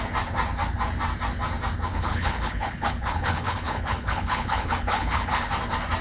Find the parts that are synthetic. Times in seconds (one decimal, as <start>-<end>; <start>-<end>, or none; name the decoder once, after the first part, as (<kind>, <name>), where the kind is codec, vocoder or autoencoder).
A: 1.9-5.5 (codec, HILCodec)